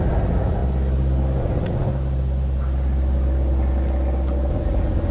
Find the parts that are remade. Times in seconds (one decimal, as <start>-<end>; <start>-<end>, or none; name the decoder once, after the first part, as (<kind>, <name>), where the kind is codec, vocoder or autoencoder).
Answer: 0.0-0.6 (vocoder, Vocos); 1.4-1.9; 4.5-5.1